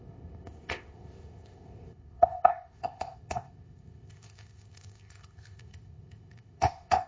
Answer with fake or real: fake